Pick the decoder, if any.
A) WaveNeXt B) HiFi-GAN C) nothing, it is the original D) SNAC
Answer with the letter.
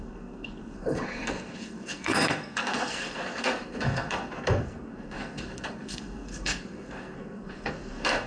D